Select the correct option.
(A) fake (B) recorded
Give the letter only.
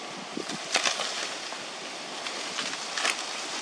B